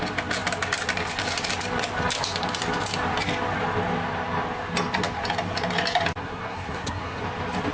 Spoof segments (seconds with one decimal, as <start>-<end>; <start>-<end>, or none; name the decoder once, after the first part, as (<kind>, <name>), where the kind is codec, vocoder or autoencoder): 6.2-7.2 (codec, SNAC)